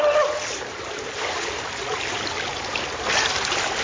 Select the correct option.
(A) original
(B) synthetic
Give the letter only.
A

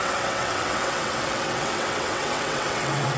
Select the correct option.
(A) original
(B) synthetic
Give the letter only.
B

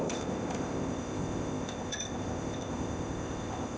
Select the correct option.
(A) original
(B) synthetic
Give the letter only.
B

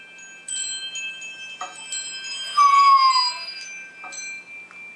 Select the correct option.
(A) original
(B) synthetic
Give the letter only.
A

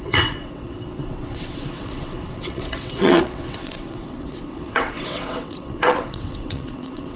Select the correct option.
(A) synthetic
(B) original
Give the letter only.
A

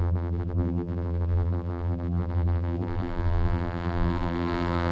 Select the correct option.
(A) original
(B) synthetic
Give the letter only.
B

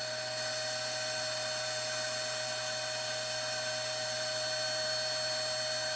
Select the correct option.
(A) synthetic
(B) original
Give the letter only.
B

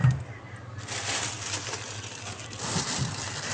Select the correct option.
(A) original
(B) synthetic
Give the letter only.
A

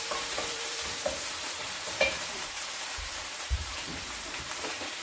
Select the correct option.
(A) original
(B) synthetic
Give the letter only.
B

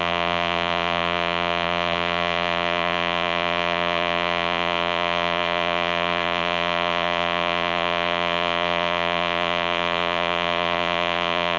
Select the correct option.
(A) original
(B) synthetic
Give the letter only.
B